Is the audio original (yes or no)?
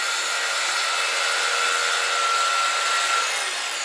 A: yes